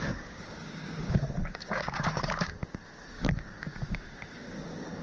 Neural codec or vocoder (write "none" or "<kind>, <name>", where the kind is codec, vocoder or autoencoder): codec, DAC